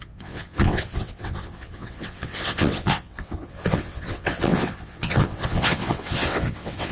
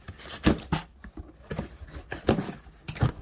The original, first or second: second